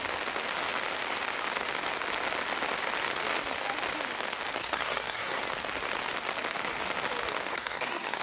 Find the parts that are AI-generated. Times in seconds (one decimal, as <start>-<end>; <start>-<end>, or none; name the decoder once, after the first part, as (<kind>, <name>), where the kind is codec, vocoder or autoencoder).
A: 4.6-5.4 (codec, SNAC); 7.5-8.2